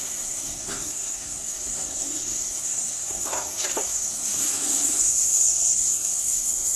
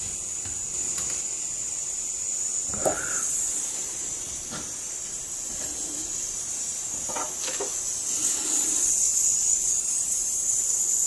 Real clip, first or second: second